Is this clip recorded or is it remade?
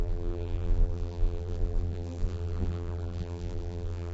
remade